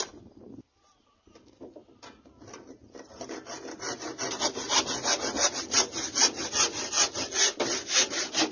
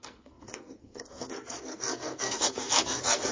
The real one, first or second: first